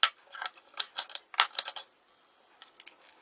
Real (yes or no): yes